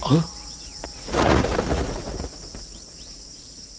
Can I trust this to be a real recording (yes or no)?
no